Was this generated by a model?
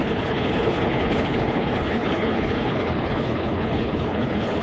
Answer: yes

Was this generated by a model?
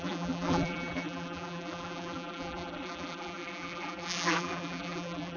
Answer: yes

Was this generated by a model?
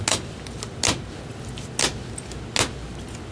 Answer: no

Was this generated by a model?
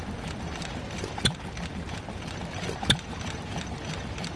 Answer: no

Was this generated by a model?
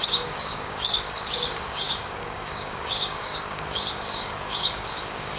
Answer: yes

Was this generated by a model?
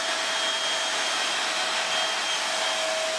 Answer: no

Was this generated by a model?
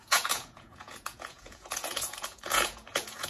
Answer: yes